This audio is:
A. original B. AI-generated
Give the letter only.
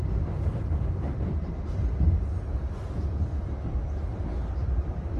A